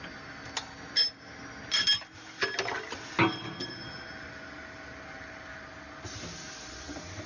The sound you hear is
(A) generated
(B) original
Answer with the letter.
B